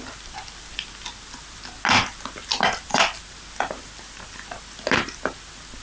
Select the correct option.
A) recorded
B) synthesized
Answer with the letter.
A